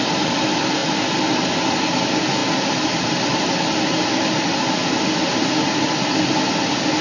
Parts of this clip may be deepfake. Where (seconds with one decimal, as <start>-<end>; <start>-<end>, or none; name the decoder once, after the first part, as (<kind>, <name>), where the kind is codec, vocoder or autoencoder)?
none